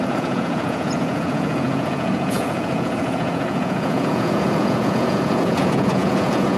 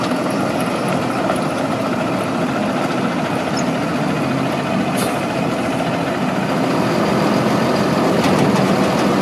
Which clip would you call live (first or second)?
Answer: second